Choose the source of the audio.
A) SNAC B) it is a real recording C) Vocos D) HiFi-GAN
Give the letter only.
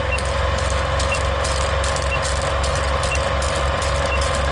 B